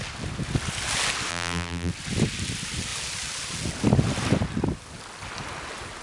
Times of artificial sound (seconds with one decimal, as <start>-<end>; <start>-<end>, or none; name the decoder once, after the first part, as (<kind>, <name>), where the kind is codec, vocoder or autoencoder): 1.3-1.9 (vocoder, BigVGAN v2)